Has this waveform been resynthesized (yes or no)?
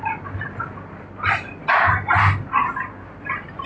no